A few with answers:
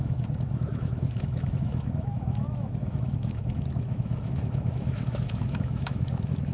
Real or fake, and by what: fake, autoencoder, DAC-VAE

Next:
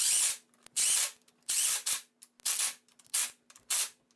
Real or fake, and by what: real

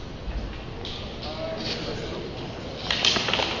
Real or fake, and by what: real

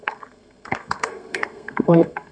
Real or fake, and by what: fake, codec, SNAC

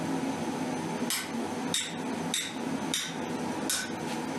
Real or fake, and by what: real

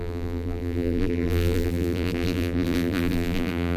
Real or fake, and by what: fake, vocoder, BigVGAN v2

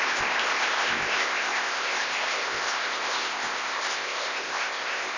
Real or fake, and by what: fake, codec, ZipCodec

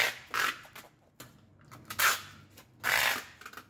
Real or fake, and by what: real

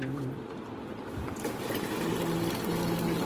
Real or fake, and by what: real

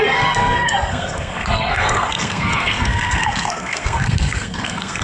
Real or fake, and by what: fake, codec, SNAC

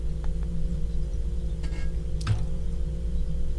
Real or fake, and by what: real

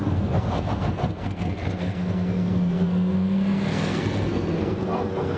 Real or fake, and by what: fake, codec, SNAC